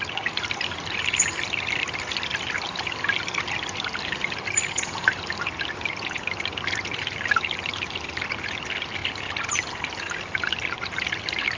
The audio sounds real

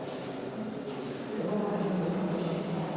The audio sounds real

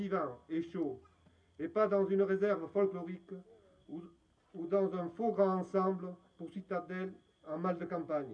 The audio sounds real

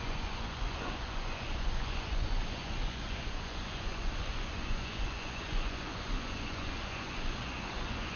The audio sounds fake